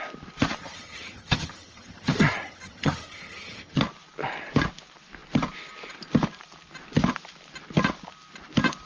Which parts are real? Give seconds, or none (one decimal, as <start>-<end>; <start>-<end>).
0.0-0.6; 3.8-8.9